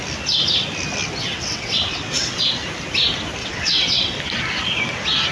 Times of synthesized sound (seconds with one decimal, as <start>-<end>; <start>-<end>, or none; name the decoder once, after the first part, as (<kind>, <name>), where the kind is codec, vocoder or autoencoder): 1.2-2.4 (vocoder, WaveNeXt); 3.4-4.2